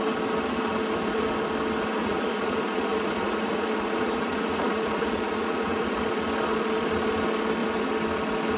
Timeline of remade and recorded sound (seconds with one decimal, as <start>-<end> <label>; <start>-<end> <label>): 0.0-2.0 recorded; 2.0-6.0 remade; 6.0-8.6 recorded